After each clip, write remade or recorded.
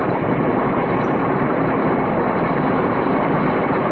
remade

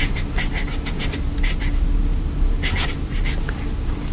recorded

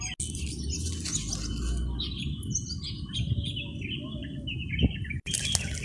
recorded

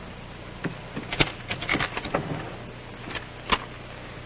recorded